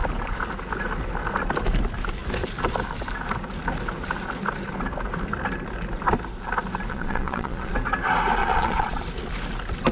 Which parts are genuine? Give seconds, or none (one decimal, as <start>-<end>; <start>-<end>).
0.0-6.9; 7.7-8.4; 9.0-9.9